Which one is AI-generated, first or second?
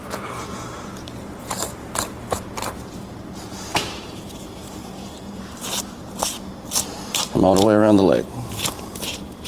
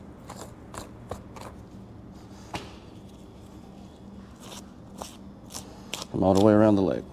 first